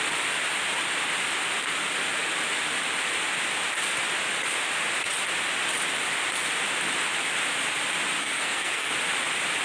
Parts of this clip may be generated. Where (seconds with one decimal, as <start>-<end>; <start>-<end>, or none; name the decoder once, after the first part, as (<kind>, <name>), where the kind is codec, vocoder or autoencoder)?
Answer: 8.2-8.9 (codec, SNAC)